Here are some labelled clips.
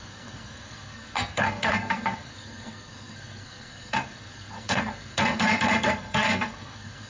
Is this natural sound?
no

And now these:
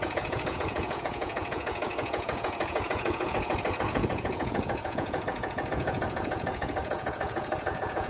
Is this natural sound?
no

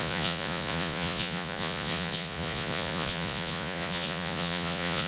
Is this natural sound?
no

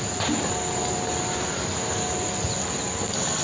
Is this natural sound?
yes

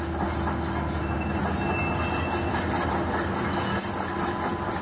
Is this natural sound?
yes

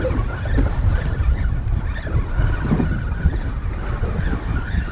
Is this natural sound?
yes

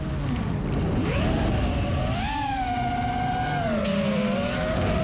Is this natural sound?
yes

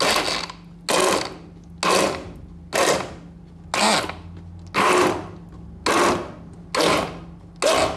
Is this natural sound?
yes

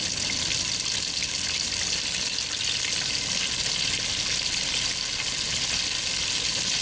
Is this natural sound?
yes